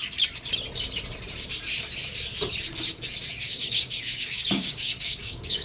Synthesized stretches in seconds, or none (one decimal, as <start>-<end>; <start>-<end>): 3.4-5.6

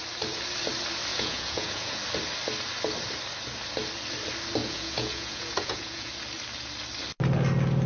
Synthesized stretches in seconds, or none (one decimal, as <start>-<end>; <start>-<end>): 1.1-2.0; 4.6-6.1

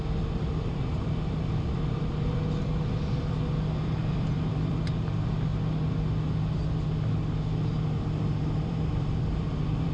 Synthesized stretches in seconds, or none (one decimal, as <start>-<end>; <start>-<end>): 0.0-5.5; 8.4-9.9

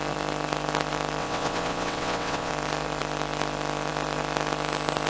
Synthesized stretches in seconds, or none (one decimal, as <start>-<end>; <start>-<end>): 1.2-2.5

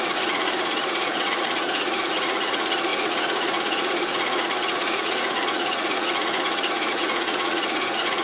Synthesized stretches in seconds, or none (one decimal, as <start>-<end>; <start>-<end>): 0.0-8.2

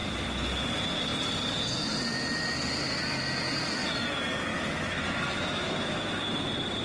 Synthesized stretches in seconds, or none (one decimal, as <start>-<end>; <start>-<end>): 4.5-6.2

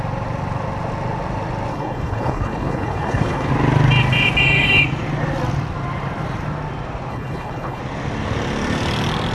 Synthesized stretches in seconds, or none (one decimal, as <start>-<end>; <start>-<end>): 1.7-3.5; 7.1-7.8